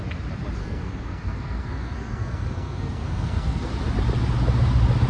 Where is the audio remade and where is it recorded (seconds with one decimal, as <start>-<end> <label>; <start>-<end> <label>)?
0.0-0.6 recorded; 0.6-3.7 remade; 3.7-5.1 recorded